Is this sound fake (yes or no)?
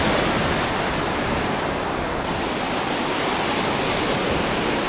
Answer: no